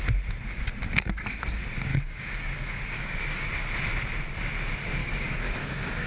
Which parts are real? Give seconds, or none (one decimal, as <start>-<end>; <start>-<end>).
0.0-1.9; 3.5-5.0